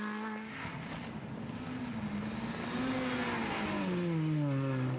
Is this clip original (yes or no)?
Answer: yes